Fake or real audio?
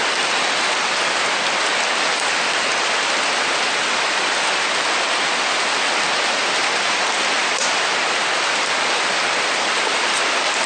real